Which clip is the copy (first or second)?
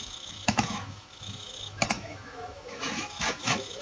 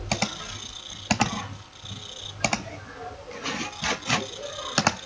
first